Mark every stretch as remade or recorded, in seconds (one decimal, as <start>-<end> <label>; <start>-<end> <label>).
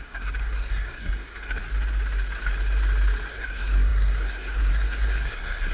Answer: 0.0-1.6 remade; 1.6-3.3 recorded; 3.3-5.7 remade